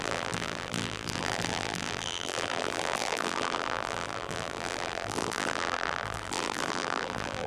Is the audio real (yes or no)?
no